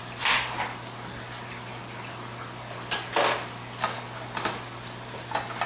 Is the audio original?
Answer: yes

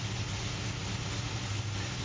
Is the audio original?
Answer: yes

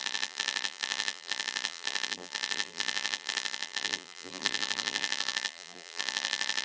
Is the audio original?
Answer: no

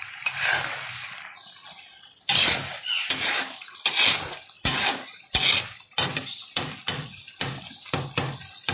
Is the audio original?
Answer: yes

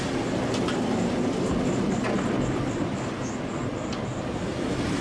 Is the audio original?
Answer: yes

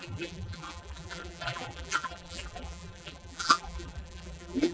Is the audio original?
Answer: no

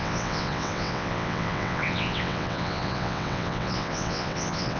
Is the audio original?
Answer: no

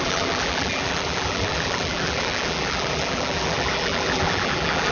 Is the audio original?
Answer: no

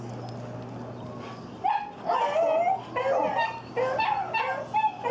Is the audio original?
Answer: yes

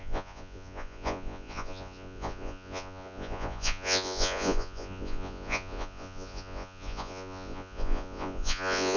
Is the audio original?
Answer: no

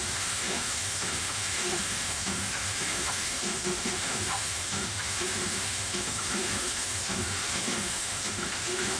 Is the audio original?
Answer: no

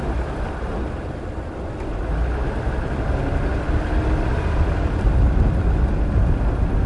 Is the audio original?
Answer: yes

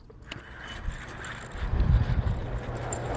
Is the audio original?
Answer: yes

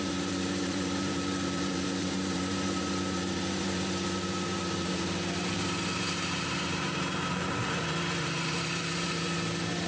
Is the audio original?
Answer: no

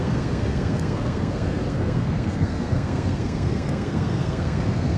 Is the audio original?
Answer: no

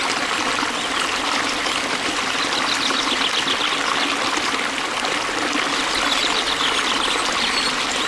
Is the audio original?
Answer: yes